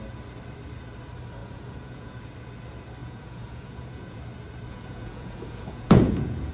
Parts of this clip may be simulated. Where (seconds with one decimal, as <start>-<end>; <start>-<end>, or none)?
1.4-2.2; 3.0-4.2; 4.7-6.5